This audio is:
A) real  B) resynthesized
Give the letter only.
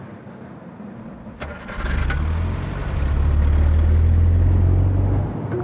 A